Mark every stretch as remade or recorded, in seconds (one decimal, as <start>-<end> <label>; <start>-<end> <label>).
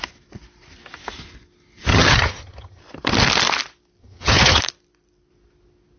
0.0-1.9 recorded; 1.9-2.8 remade; 2.8-4.0 recorded; 4.0-4.6 remade; 4.6-6.0 recorded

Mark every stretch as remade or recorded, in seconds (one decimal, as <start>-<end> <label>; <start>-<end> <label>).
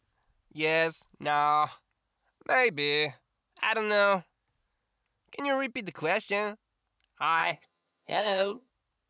0.0-7.4 recorded; 7.4-8.7 remade; 8.7-9.1 recorded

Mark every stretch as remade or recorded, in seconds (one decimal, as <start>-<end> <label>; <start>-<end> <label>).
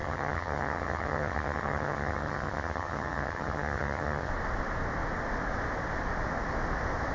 0.0-4.3 remade; 4.3-7.1 recorded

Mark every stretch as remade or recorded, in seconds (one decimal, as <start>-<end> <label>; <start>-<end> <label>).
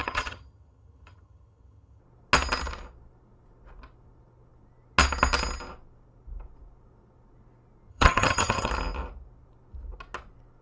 0.0-2.0 remade; 2.0-7.9 recorded; 7.9-8.7 remade; 8.7-10.6 recorded